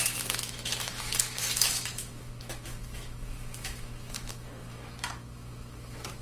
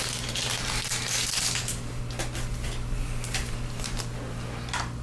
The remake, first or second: first